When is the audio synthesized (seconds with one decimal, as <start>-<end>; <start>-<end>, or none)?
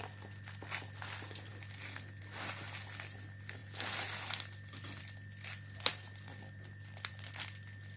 3.6-5.0; 5.9-7.1